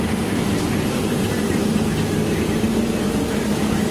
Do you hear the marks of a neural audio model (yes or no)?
no